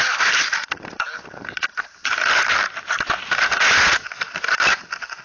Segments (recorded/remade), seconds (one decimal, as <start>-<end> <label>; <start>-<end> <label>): 0.0-5.2 recorded